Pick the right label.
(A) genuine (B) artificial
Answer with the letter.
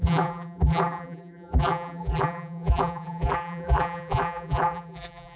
B